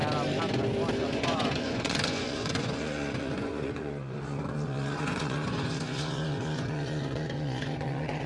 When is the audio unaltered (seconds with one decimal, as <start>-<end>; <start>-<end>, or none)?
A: 0.0-1.0